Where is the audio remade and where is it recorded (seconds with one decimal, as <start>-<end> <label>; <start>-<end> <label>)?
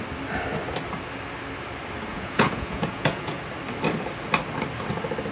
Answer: 0.0-2.1 recorded; 2.1-3.4 remade; 3.4-5.3 recorded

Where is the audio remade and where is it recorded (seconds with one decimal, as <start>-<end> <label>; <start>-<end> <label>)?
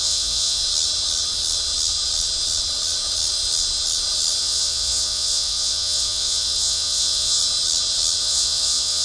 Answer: 0.0-0.6 remade; 0.6-4.4 recorded; 4.4-7.4 remade; 7.4-8.2 recorded; 8.2-9.0 remade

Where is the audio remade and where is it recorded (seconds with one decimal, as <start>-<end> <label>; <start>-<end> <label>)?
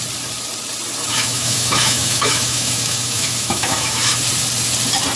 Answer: 0.0-1.1 recorded; 1.1-4.2 remade; 4.2-5.2 recorded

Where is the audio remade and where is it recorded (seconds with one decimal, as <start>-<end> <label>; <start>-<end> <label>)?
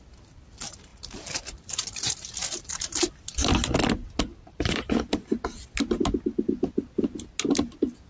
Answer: 0.0-0.9 recorded; 0.9-3.1 remade; 3.1-4.3 recorded; 4.3-4.9 remade; 4.9-8.1 recorded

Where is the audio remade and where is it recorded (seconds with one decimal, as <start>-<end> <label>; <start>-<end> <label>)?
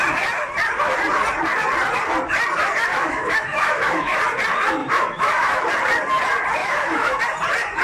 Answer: 0.0-2.9 recorded; 2.9-4.2 remade; 4.2-4.8 recorded; 4.8-5.7 remade; 5.7-6.6 recorded; 6.6-7.2 remade; 7.2-7.8 recorded